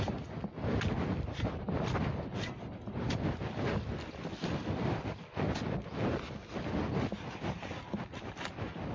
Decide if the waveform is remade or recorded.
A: recorded